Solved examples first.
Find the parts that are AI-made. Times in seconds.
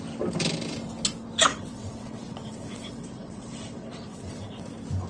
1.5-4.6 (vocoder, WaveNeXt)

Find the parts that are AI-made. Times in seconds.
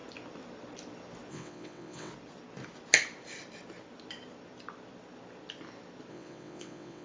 1.3-2.1 (vocoder, WaveNeXt); 6.1-7.0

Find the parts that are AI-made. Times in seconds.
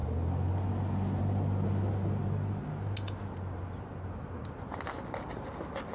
none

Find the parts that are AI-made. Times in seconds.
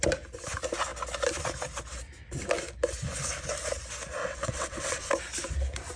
4.2-5.1 (vocoder, WaveNeXt)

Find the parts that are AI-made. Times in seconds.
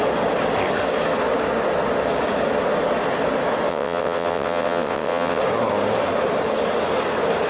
3.7-5.4 (vocoder, WaveNeXt)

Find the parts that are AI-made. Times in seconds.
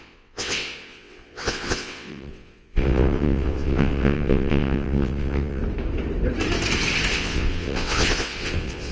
0.0-5.6 (vocoder, WaveNeXt); 7.1-8.9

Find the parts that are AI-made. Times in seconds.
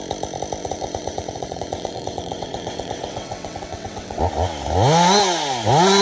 0.6-4.2 (vocoder, WaveNeXt)